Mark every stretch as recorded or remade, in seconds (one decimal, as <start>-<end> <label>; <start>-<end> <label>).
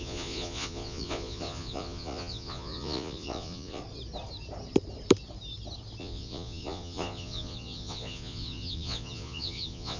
0.0-3.8 remade; 3.8-6.0 recorded; 6.0-10.0 remade